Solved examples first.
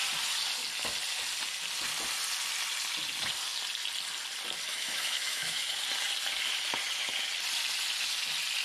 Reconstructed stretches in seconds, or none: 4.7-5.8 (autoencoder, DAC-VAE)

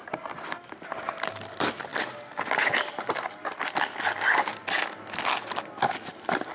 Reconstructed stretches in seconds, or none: none

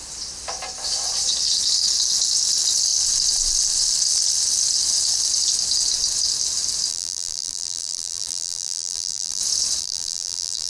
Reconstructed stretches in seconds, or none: 6.9-9.4 (vocoder, BigVGAN v2); 9.8-10.7